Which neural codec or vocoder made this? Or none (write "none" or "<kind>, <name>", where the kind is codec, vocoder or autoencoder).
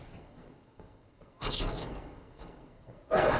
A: codec, SNAC